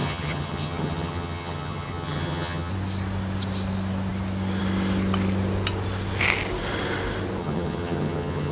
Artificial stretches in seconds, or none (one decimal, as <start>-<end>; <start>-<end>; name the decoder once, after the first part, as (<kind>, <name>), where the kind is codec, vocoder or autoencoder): 0.0-2.7 (vocoder, HiFi-GAN); 7.4-8.5